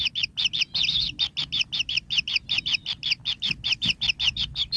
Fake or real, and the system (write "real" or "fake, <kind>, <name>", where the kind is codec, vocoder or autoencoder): real